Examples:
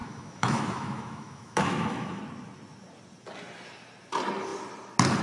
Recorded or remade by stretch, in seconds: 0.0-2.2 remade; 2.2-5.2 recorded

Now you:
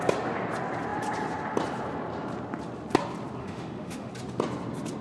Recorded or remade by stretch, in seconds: 0.0-3.4 recorded; 3.4-4.1 remade; 4.1-5.0 recorded

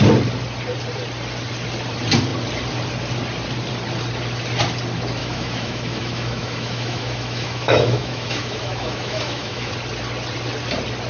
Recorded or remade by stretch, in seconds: 0.0-5.2 recorded; 5.2-9.7 remade; 9.7-11.1 recorded

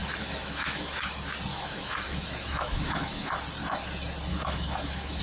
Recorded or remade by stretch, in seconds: 0.0-1.0 remade; 1.0-1.5 recorded; 1.5-3.3 remade; 3.3-4.3 recorded; 4.3-5.2 remade

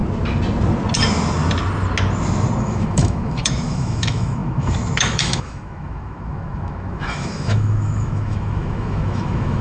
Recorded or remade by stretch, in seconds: 0.0-2.6 recorded; 2.6-9.6 remade

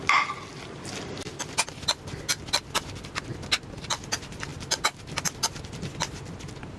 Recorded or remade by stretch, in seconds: 0.0-6.8 recorded

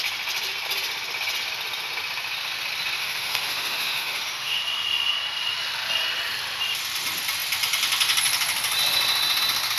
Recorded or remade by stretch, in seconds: 0.0-3.0 recorded; 3.0-4.6 remade; 4.6-9.8 recorded